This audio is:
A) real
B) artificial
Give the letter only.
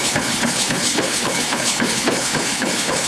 B